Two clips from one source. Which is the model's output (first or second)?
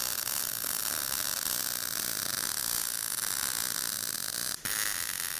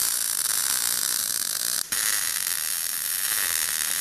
second